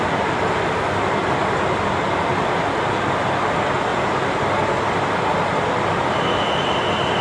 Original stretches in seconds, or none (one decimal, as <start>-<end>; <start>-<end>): 0.0-7.2

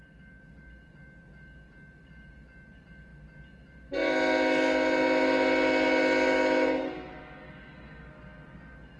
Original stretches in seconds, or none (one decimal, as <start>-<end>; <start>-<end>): 0.0-9.0

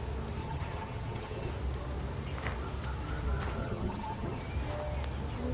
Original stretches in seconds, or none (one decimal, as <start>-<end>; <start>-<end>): 0.0-0.4; 1.5-3.6; 4.4-5.5

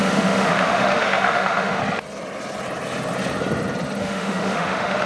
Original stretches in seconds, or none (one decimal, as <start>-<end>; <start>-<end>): 1.8-4.0